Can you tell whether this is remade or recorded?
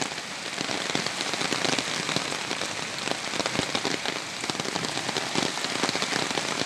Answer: recorded